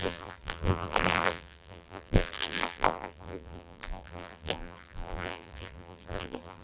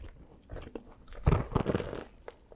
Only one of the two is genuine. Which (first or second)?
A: second